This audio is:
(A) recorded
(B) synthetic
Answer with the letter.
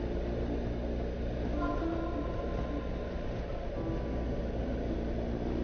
A